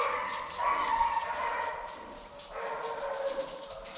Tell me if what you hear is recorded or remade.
recorded